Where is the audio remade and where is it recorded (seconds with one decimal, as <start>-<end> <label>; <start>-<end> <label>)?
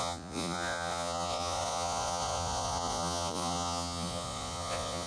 0.0-5.1 remade